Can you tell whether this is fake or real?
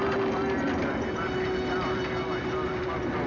real